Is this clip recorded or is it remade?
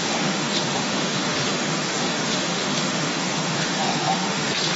remade